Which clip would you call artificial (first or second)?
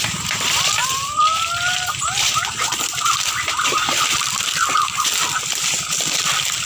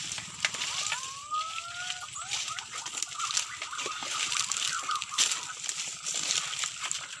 first